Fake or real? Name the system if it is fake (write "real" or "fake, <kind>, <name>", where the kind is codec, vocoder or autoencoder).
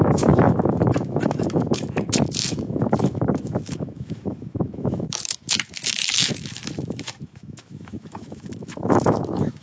fake, autoencoder, DAC-VAE